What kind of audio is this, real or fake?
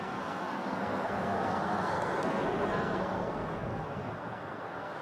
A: fake